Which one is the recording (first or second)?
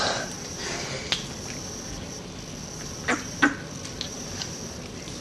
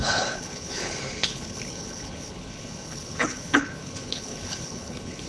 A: first